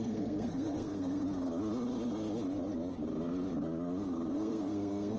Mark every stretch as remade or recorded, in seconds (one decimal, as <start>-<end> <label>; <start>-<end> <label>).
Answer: 0.0-1.2 remade; 1.2-4.3 recorded; 4.3-5.2 remade